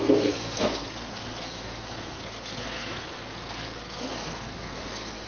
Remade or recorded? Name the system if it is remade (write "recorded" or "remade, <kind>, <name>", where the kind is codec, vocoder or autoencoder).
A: remade, codec, SNAC